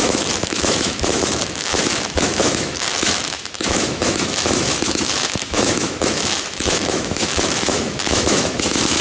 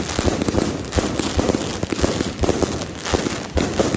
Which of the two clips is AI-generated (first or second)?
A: first